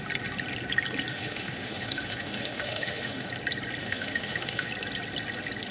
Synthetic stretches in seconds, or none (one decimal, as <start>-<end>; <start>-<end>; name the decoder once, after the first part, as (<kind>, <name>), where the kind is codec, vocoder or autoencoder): 1.1-3.3 (autoencoder, DAC-VAE); 3.8-4.7